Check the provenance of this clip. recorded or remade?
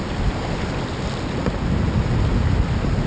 recorded